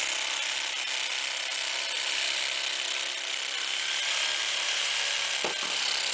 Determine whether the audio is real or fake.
real